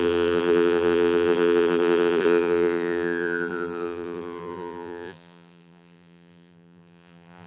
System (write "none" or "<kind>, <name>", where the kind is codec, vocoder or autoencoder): vocoder, BigVGAN v2